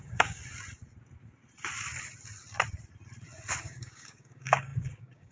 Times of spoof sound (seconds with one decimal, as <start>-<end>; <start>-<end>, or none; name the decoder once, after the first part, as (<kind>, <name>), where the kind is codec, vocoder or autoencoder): 0.0-0.4 (codec, DAC); 3.6-5.3